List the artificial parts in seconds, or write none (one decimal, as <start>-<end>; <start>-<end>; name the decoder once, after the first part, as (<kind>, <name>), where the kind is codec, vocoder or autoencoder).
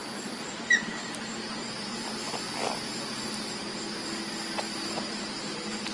0.0-5.9 (vocoder, BigVGAN v2)